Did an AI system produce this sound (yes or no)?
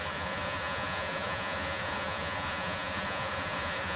yes